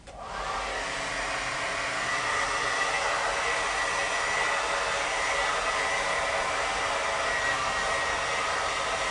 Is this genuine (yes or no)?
yes